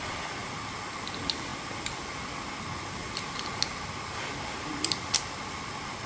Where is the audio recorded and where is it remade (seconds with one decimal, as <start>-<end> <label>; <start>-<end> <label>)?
0.0-6.1 recorded